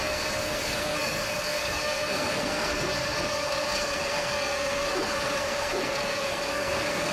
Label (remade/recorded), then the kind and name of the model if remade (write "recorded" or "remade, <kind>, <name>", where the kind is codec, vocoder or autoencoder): remade, codec, SNAC